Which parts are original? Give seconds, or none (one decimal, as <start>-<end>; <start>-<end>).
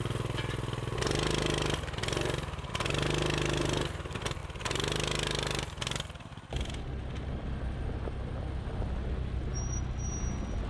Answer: 0.0-10.7